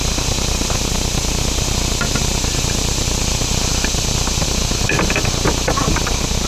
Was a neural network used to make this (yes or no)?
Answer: no